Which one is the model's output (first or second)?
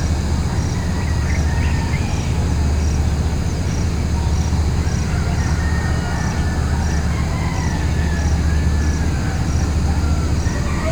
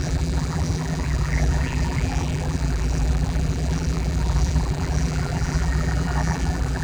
second